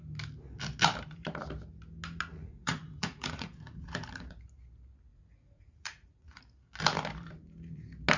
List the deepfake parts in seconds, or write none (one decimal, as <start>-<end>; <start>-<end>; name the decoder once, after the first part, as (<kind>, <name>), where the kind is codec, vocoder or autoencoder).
2.3-4.4 (vocoder, Vocos); 5.1-6.4